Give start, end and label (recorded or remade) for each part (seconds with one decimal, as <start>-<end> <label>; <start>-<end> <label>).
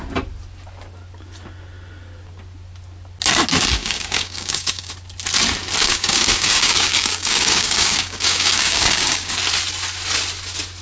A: 0.0-3.8 recorded; 3.8-4.9 remade; 4.9-5.8 recorded; 5.8-9.4 remade; 9.4-10.8 recorded